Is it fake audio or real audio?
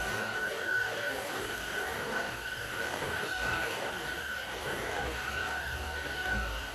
fake